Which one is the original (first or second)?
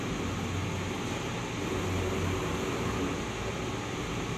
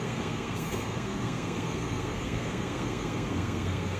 first